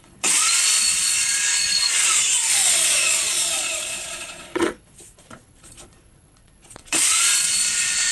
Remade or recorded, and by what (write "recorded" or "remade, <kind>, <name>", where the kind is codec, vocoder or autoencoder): remade, vocoder, Vocos